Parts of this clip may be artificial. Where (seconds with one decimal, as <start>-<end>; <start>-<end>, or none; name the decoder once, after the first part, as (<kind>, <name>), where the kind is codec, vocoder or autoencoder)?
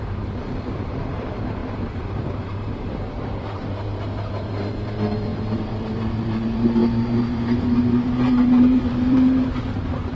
0.0-10.1 (vocoder, BigVGAN v2)